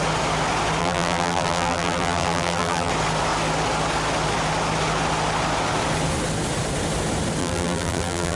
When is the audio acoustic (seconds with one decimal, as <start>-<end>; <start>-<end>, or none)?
0.0-0.8; 2.9-7.4